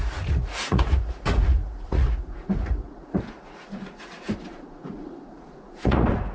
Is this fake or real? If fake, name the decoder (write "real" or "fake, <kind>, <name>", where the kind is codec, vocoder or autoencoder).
fake, vocoder, Vocos